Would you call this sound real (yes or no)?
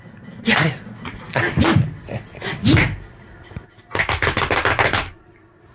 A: yes